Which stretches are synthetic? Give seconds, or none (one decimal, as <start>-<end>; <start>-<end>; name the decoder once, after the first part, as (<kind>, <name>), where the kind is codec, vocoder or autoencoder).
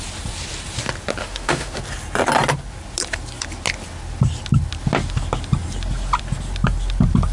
1.2-1.8 (autoencoder, DAC-VAE)